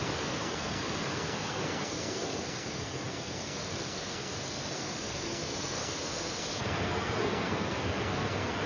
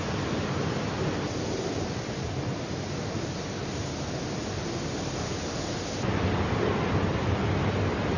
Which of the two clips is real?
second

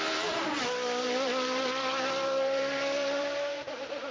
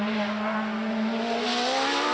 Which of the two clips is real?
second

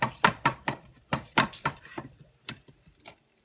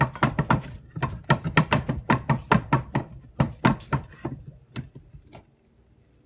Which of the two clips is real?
second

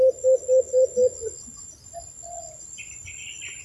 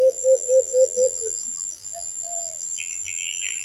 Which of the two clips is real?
first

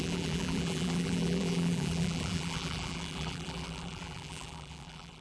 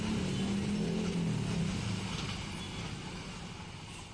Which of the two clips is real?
second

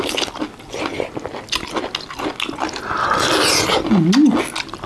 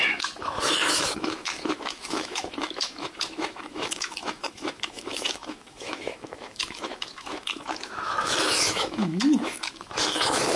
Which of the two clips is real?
first